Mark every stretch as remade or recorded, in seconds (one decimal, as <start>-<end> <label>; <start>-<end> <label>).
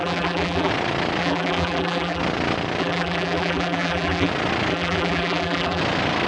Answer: 0.0-0.7 remade; 0.7-1.2 recorded; 1.2-2.2 remade; 2.2-2.8 recorded; 2.8-4.3 remade; 4.3-4.7 recorded; 4.7-5.8 remade; 5.8-6.3 recorded